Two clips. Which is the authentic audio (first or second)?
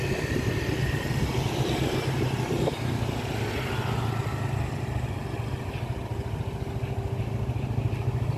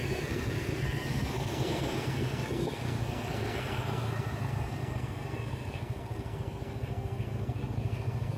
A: first